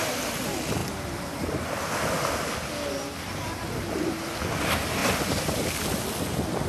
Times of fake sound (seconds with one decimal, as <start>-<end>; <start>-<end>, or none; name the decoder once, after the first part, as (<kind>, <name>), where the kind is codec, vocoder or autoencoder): 0.0-0.8 (vocoder, BigVGAN v2); 4.4-6.7